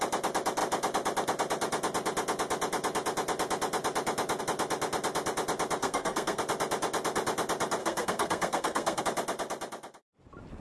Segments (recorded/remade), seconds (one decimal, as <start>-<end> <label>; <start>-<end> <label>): 0.0-5.8 recorded; 5.8-6.4 remade; 6.4-7.8 recorded; 7.8-9.0 remade; 9.0-10.6 recorded